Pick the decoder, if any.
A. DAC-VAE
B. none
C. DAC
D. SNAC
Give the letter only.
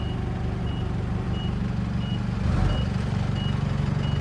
B